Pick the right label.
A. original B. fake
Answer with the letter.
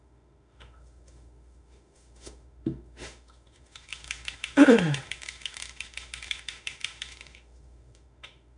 B